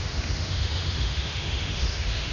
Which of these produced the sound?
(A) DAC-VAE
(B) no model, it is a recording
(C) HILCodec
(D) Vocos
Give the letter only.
A